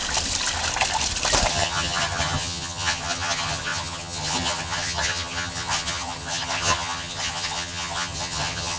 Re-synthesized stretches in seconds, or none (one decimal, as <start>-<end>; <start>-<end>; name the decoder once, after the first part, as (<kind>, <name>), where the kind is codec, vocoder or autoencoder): 1.5-8.8 (vocoder, HiFi-GAN)